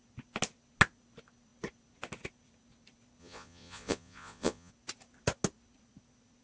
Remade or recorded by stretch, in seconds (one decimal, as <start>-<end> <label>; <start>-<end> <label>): 0.0-3.2 recorded; 3.2-4.7 remade; 4.7-6.4 recorded